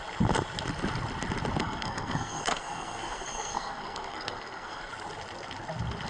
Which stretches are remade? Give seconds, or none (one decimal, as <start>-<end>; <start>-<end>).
1.6-4.9